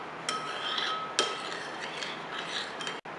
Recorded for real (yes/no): yes